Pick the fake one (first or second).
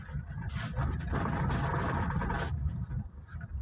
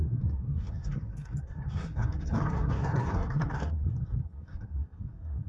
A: second